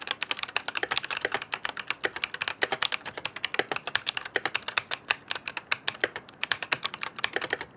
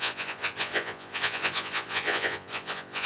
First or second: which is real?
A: first